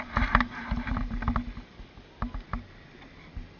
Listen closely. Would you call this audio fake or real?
real